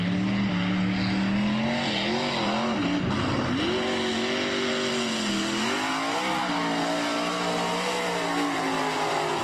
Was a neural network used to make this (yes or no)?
no